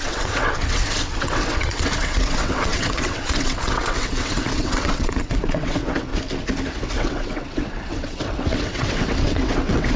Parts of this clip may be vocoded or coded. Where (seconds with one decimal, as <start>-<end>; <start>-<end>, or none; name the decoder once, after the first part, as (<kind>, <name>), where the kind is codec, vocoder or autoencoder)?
0.0-6.1 (vocoder, WaveNeXt); 6.7-10.0